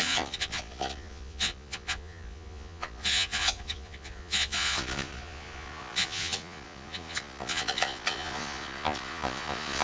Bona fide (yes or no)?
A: no